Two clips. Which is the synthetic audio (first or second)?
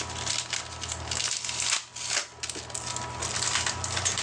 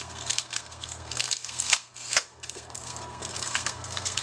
second